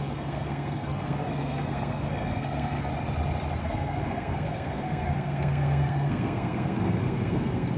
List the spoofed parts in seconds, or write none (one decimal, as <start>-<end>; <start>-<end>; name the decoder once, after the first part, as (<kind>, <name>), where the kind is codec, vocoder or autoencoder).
0.0-2.9 (codec, SNAC); 3.6-7.8